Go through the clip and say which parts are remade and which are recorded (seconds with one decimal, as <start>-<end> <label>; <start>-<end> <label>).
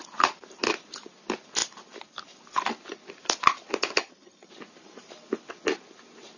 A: 0.0-4.0 recorded; 4.0-4.5 remade; 4.5-6.4 recorded